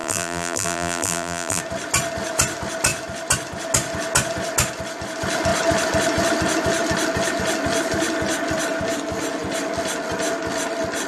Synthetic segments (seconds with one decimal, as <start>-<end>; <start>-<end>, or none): 0.0-1.6